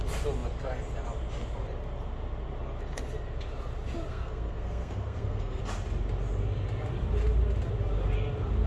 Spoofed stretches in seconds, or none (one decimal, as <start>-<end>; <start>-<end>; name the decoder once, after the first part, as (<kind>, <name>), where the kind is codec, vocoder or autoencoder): 4.1-5.6 (codec, SNAC)